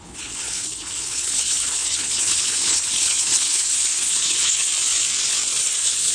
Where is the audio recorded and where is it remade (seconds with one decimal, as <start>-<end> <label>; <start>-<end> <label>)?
0.0-4.7 remade; 4.7-5.6 recorded; 5.6-6.1 remade